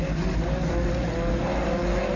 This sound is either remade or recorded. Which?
recorded